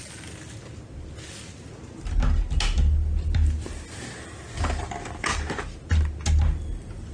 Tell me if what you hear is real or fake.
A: real